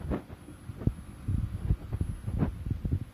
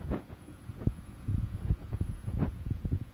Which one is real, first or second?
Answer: first